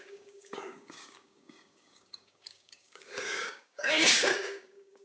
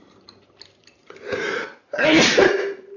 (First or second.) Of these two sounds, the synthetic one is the first